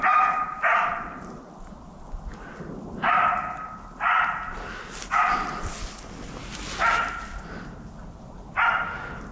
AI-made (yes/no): no